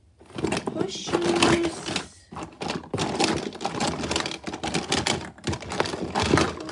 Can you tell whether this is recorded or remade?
recorded